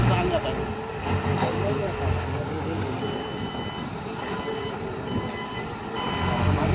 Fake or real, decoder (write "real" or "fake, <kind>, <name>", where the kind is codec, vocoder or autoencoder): real